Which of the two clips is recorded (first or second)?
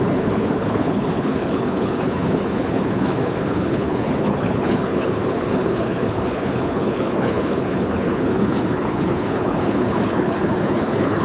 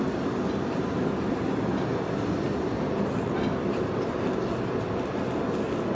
second